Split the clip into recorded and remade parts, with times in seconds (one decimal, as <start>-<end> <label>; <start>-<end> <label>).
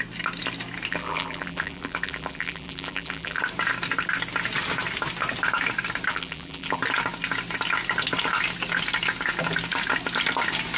0.0-0.9 recorded; 0.9-3.4 remade; 3.4-6.1 recorded; 6.1-6.8 remade; 6.8-10.8 recorded